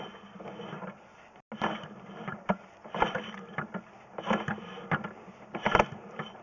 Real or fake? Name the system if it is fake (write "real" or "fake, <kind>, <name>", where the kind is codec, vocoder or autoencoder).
real